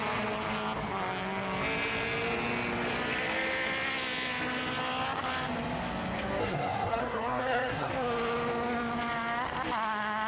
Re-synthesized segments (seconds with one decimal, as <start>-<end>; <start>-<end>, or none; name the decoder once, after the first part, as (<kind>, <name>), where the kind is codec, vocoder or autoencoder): 6.4-7.9 (codec, SNAC)